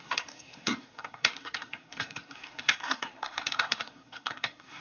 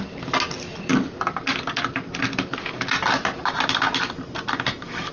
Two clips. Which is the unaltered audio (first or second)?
second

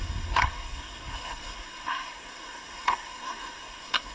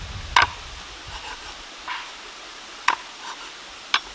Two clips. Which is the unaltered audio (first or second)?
second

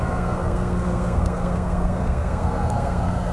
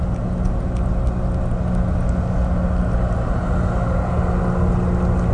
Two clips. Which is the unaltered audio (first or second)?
second